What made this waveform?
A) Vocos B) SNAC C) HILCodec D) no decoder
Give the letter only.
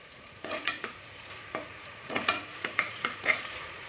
A